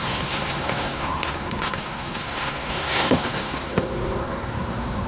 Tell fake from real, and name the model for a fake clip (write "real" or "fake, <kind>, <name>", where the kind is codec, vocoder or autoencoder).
fake, codec, SNAC